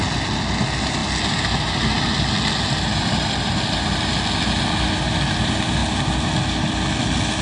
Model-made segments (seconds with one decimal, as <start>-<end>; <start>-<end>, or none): none